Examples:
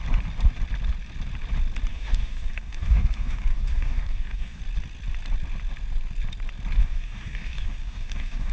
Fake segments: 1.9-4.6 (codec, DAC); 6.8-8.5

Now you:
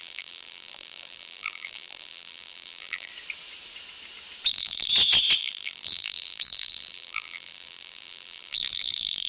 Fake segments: 0.0-3.1 (vocoder, BigVGAN v2); 4.5-4.9; 5.4-9.3

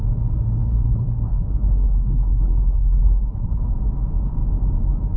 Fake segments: 0.6-3.7 (codec, HILCodec)